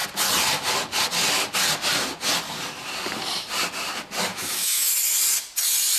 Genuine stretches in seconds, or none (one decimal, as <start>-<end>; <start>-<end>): 0.0-4.3; 4.9-6.0